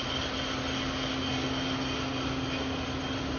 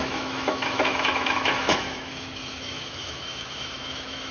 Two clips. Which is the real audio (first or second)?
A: first